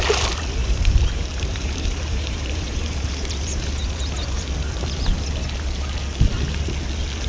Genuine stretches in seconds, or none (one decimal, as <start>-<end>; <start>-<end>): 0.0-0.6; 4.5-7.3